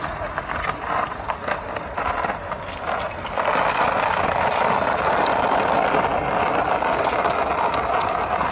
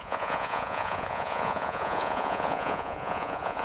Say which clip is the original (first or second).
first